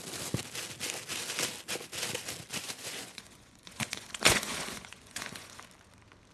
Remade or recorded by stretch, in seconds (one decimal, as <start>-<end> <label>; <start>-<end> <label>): 0.0-2.5 recorded; 2.5-5.6 remade; 5.6-6.3 recorded